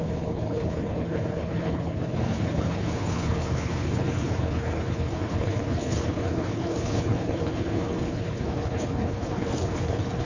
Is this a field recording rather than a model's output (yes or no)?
no